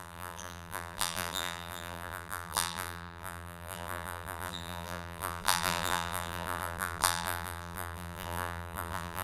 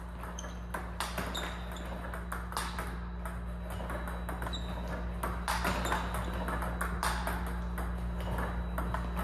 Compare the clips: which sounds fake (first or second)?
first